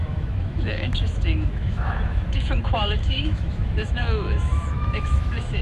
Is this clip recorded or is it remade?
remade